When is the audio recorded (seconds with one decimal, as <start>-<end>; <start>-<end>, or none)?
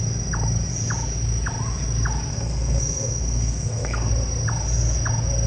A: 0.0-2.3; 4.1-5.5